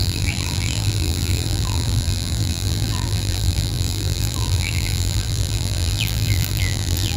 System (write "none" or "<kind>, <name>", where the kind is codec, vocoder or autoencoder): vocoder, BigVGAN v2